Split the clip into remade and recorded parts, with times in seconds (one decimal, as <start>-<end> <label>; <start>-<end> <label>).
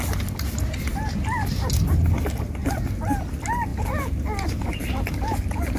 0.0-5.8 recorded